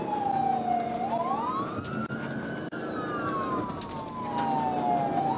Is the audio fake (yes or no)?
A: no